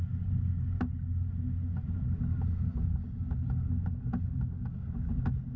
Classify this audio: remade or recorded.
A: recorded